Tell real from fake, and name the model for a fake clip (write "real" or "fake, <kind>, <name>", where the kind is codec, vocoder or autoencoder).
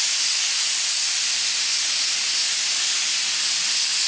real